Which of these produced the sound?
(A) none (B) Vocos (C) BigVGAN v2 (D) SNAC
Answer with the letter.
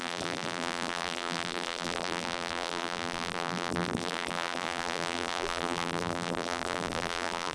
C